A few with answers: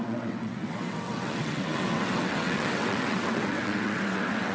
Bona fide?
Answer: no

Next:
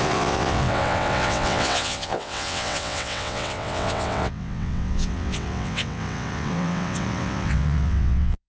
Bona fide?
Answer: no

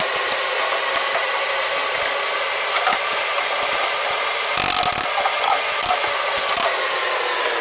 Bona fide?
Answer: yes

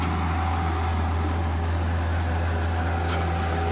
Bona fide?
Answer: yes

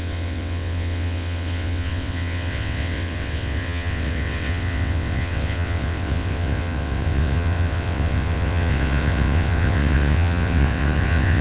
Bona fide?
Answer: no